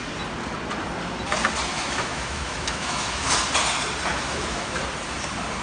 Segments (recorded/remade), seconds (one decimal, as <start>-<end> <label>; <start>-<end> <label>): 0.0-1.7 recorded; 1.7-3.3 remade; 3.3-4.1 recorded; 4.1-4.8 remade; 4.8-5.6 recorded